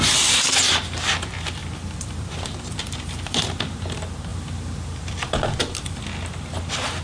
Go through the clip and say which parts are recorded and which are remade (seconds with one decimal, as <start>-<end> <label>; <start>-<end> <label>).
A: 0.0-1.6 recorded; 1.6-3.6 remade; 3.6-4.3 recorded; 4.3-5.6 remade; 5.6-7.0 recorded